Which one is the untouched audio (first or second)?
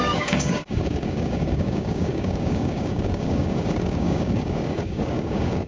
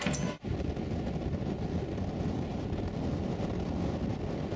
second